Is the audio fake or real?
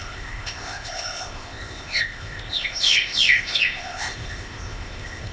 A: fake